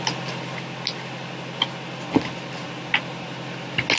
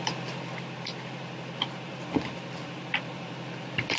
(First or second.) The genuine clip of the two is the first